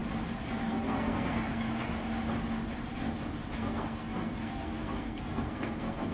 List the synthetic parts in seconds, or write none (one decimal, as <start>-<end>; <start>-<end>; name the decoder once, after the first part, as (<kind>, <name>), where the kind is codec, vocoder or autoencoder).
0.6-1.9 (codec, SNAC); 3.5-6.1